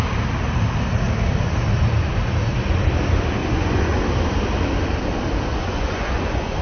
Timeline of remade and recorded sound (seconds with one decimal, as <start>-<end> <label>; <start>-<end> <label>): 0.0-3.4 recorded; 3.4-4.0 remade; 4.0-5.5 recorded; 5.5-6.6 remade